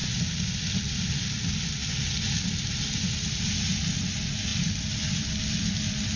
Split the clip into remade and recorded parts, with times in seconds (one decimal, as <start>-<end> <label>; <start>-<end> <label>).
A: 0.0-6.2 recorded